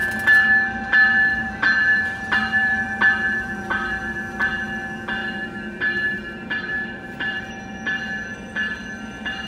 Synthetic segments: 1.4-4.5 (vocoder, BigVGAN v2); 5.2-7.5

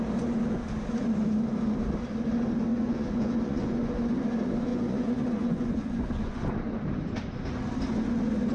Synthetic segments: 2.7-3.9 (vocoder, Vocos); 4.7-6.5